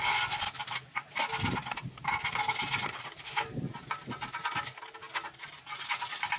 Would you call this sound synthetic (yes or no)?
no